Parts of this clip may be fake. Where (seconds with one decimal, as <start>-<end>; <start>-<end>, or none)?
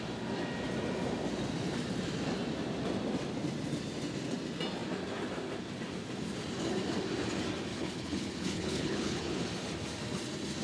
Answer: 7.7-9.4